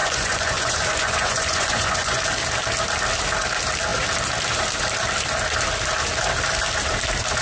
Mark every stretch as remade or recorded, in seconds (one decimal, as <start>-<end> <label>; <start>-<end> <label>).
0.0-2.2 remade; 2.2-7.4 recorded